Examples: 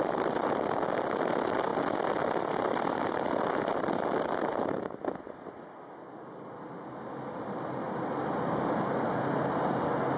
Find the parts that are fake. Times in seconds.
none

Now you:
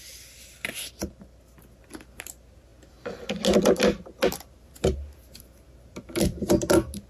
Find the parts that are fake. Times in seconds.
none